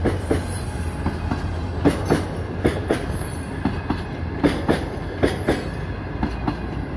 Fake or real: real